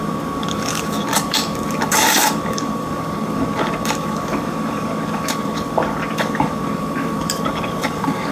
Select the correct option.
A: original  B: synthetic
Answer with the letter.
B